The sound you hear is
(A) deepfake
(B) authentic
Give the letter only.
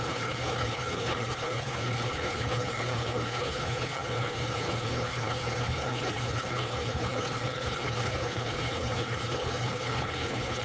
A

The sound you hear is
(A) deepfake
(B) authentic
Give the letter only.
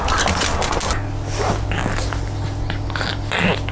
B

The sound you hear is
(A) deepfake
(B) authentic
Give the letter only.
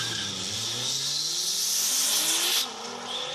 B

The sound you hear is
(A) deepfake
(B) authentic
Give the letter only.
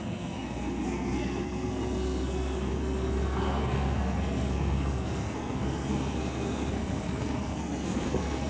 A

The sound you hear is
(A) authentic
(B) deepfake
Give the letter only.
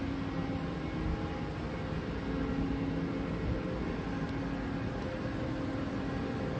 A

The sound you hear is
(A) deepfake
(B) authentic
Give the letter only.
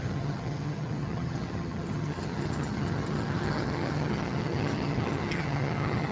A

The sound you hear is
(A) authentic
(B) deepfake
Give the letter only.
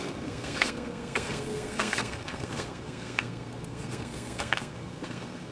B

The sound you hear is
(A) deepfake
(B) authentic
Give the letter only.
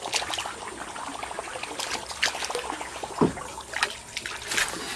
B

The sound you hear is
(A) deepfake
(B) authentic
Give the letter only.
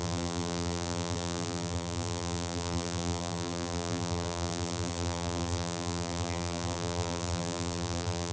A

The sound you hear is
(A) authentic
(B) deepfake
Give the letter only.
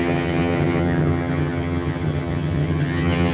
B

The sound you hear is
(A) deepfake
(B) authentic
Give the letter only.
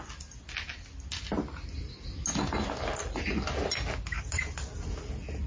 B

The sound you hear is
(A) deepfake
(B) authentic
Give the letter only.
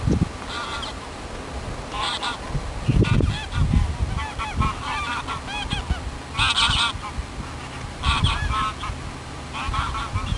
B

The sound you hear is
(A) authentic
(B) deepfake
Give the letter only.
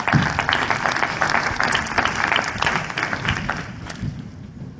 B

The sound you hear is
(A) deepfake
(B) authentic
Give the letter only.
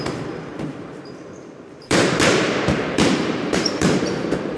A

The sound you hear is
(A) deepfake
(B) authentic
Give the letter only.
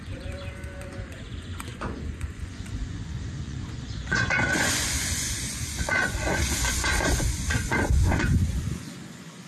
A